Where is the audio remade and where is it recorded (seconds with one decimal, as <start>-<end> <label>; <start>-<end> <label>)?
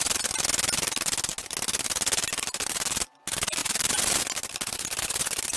0.0-3.6 recorded; 3.6-4.2 remade; 4.2-5.6 recorded